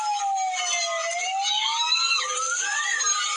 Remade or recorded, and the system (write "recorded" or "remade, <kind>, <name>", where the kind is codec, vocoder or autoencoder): recorded